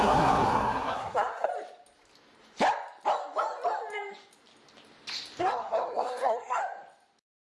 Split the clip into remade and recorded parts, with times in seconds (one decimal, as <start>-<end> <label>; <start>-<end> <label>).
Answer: 0.0-1.5 remade; 1.5-5.4 recorded; 5.4-6.6 remade; 6.6-7.5 recorded